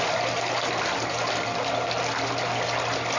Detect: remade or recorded recorded